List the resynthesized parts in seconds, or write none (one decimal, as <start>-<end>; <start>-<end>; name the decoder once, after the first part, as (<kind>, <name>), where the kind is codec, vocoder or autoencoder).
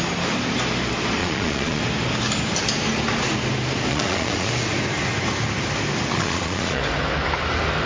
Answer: 1.2-1.8 (vocoder, Vocos); 3.9-4.5; 6.1-6.8